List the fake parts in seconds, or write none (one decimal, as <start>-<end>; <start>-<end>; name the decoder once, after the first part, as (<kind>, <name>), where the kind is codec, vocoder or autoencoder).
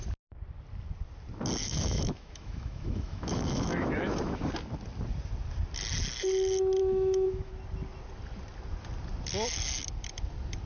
1.6-4.4 (autoencoder, DAC-VAE); 6.8-7.5